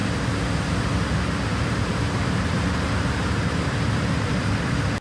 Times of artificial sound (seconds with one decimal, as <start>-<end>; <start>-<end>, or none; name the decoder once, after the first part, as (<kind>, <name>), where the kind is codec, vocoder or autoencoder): 1.5-4.5 (vocoder, BigVGAN v2)